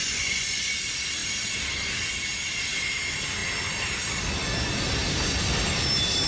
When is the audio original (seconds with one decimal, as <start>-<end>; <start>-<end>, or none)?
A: 0.7-6.3